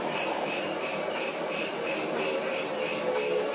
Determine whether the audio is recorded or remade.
recorded